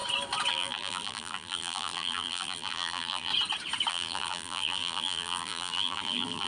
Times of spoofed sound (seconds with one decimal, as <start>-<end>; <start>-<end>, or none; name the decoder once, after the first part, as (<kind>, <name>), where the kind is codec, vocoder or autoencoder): 0.5-3.3 (vocoder, BigVGAN v2); 3.9-6.5